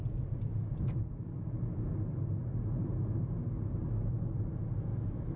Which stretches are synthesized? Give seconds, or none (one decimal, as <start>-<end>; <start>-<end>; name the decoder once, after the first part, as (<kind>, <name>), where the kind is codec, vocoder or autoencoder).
4.9-5.4 (autoencoder, DAC-VAE)